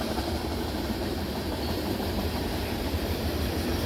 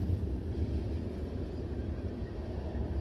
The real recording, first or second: second